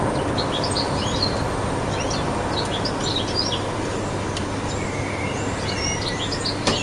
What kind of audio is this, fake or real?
real